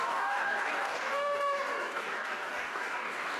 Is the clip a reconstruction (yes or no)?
yes